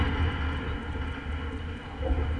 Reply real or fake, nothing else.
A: real